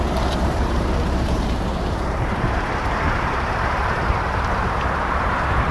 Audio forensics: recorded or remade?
remade